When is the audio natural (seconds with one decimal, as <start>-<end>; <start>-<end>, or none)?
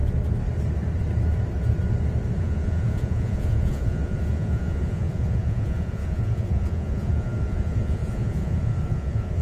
0.0-2.4